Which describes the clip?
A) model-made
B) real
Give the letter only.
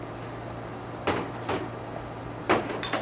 B